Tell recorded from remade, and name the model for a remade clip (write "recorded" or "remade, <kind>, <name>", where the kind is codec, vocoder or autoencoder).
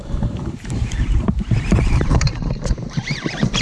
remade, vocoder, BigVGAN v2